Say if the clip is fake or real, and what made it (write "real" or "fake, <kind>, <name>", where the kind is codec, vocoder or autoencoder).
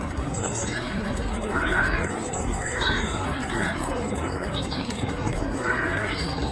fake, codec, SNAC